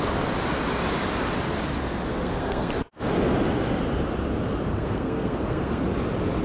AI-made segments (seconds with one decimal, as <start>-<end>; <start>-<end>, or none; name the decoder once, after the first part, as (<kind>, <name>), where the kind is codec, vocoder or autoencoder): 2.1-2.7 (codec, SNAC); 4.7-5.8